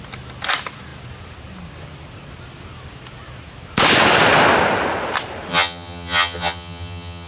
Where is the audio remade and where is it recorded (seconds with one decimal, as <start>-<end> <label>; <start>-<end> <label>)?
0.0-5.5 recorded; 5.5-7.3 remade